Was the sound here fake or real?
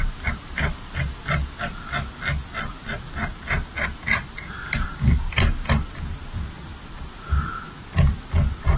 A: real